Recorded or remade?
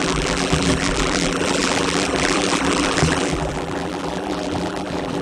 remade